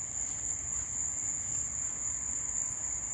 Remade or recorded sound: recorded